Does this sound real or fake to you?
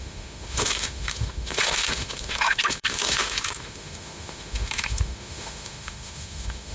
fake